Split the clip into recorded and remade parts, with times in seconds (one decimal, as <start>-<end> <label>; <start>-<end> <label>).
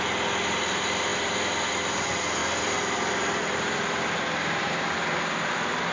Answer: 0.0-1.1 recorded; 1.1-1.7 remade; 1.7-2.4 recorded; 2.4-4.0 remade; 4.0-5.9 recorded